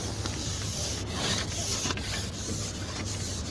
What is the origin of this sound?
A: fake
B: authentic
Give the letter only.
B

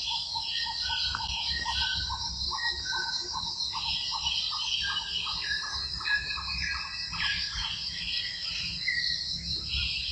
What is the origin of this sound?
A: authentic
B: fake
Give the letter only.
A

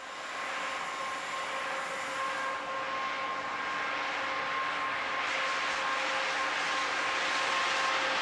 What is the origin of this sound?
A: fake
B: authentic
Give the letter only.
B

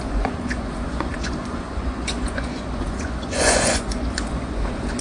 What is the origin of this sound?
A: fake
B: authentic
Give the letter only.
A